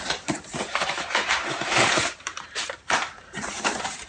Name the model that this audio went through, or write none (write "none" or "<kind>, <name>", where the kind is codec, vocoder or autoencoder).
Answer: vocoder, BigVGAN v2